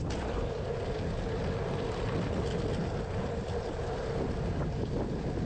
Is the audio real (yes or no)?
yes